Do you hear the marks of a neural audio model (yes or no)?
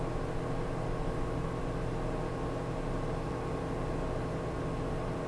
no